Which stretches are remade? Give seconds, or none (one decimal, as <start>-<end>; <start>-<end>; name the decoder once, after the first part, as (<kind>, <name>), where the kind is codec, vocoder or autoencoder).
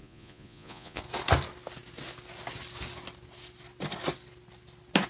0.0-1.0 (vocoder, Vocos)